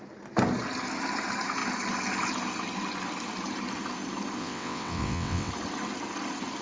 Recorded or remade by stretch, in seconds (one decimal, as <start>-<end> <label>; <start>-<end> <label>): 0.0-4.4 recorded; 4.4-5.5 remade; 5.5-6.6 recorded